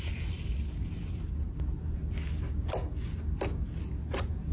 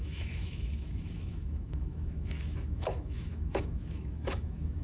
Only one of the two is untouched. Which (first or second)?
first